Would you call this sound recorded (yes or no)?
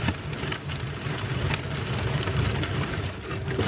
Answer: yes